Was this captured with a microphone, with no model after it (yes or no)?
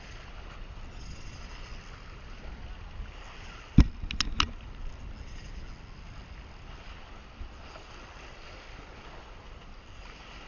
yes